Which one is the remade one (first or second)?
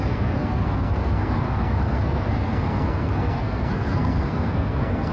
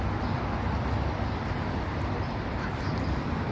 first